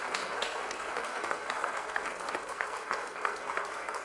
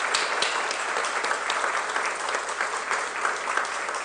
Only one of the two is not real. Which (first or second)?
first